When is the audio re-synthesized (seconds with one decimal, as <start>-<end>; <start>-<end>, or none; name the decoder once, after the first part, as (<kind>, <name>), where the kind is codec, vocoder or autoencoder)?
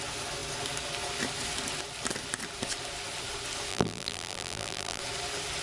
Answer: 3.7-5.0 (vocoder, BigVGAN v2)